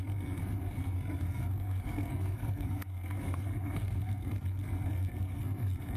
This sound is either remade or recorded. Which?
remade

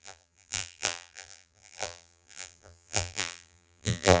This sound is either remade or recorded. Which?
remade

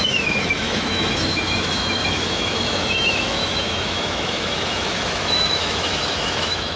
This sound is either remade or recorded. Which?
remade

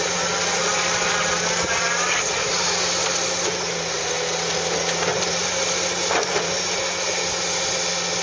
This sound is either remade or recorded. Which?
recorded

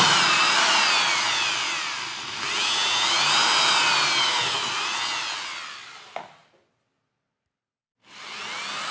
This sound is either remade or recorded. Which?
recorded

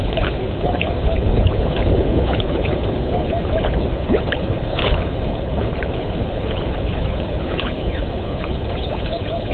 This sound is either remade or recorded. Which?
remade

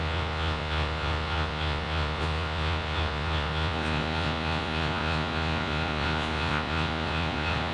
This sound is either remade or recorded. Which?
remade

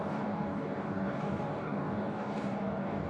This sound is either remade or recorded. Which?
remade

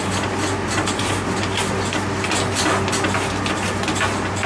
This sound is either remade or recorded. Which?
recorded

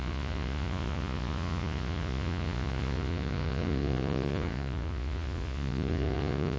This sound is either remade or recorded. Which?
remade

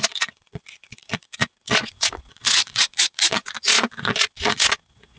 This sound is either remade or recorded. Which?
remade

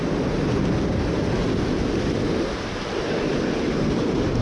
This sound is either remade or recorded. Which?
recorded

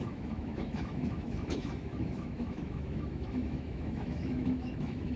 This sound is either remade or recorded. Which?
remade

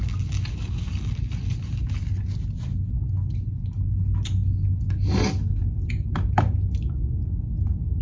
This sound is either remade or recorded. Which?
recorded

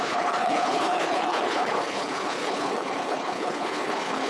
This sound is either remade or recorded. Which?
remade